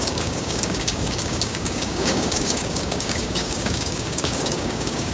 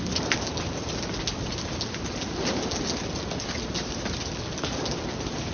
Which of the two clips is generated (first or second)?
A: first